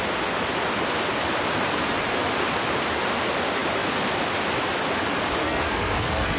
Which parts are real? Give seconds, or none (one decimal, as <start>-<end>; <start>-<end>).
0.0-5.4